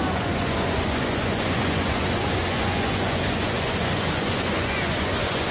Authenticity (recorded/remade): remade